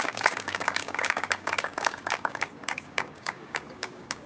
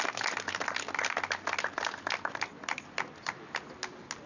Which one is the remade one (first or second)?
first